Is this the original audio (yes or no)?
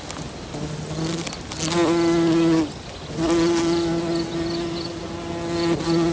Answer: yes